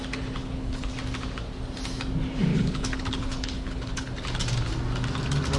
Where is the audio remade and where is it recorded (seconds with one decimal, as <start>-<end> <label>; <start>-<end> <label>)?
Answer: 0.0-0.4 recorded; 0.4-0.9 remade; 0.9-2.5 recorded; 2.5-4.1 remade; 4.1-5.6 recorded

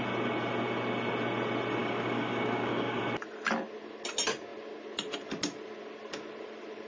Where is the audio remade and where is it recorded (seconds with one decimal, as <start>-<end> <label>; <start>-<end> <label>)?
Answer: 0.0-1.8 recorded; 1.8-3.0 remade; 3.0-6.9 recorded